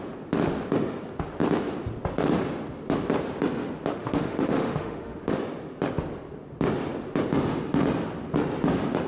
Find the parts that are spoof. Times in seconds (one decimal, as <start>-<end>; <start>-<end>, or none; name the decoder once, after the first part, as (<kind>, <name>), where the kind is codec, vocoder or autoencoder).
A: 4.0-5.4 (autoencoder, DAC-VAE)